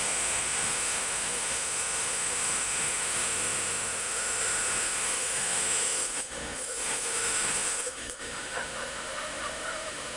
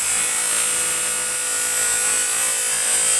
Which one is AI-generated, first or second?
first